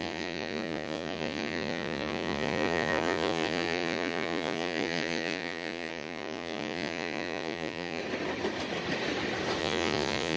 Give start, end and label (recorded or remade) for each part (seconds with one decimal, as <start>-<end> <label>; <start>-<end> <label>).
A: 0.0-8.0 remade; 8.0-9.6 recorded; 9.6-10.4 remade